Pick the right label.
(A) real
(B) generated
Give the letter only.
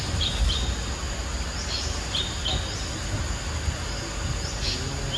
A